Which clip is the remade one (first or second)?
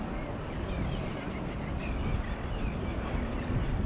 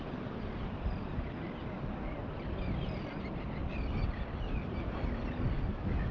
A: second